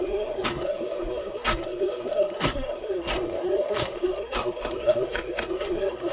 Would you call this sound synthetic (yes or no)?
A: yes